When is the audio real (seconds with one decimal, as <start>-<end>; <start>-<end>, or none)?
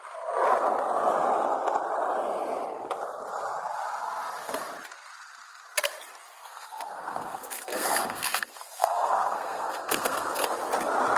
0.0-6.4; 10.5-11.2